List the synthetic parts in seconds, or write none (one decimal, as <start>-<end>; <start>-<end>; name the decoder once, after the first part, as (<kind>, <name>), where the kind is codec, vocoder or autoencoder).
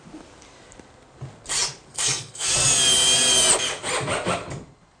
1.9-2.5 (codec, SNAC)